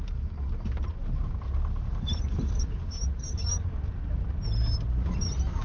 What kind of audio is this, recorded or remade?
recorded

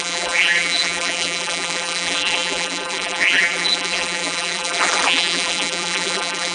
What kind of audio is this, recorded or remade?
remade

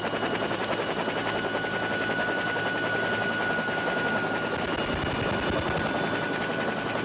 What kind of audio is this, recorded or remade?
recorded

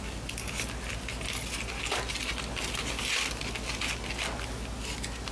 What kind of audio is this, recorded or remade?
recorded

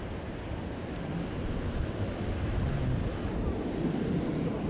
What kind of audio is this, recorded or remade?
recorded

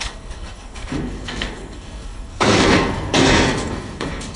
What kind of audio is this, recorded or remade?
remade